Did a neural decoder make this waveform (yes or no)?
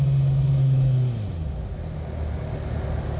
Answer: no